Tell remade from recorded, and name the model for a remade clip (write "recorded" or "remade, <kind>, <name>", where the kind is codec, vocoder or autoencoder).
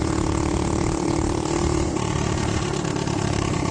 remade, vocoder, BigVGAN v2